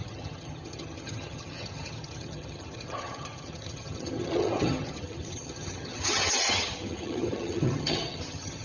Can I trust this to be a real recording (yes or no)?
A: no